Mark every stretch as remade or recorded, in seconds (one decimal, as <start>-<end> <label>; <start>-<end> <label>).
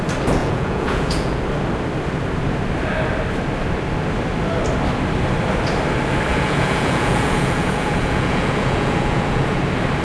0.0-0.4 recorded; 0.4-1.4 remade; 1.4-6.3 recorded; 6.3-9.6 remade; 9.6-10.0 recorded